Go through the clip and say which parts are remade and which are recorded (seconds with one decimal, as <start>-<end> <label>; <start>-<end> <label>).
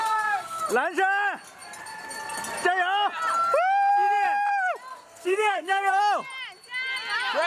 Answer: 0.0-0.6 remade; 0.6-4.9 recorded; 4.9-6.0 remade; 6.0-7.5 recorded